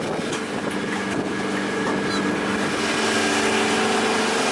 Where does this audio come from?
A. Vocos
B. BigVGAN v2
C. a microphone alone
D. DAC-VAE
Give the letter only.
C